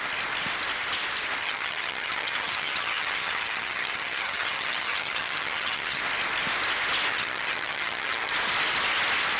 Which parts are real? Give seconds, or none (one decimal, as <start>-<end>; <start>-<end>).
0.0-1.4; 6.0-7.1; 8.3-9.4